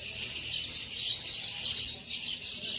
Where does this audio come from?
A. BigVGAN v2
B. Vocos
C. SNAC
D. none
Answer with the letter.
D